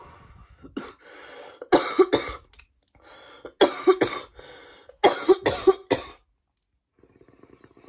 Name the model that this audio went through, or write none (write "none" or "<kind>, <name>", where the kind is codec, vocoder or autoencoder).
none